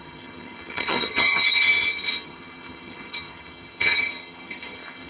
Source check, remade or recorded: remade